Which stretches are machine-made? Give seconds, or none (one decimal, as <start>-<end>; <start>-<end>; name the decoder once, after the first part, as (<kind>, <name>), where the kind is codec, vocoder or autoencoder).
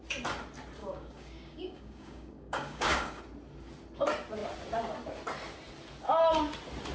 0.8-3.2 (codec, DAC)